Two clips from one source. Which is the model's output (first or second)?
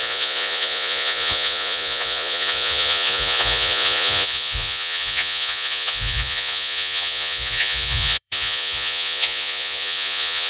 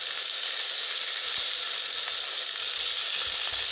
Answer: first